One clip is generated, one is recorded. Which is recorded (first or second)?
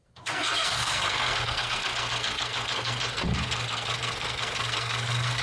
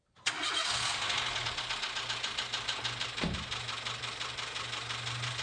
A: second